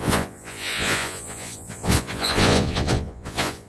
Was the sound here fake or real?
fake